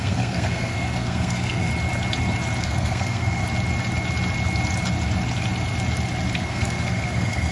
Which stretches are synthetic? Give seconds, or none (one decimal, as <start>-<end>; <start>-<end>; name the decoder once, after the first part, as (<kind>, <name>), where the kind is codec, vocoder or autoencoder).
0.0-1.7 (codec, SNAC); 2.6-3.4; 6.4-7.5